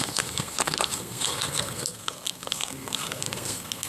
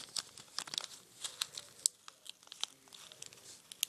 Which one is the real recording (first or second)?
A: second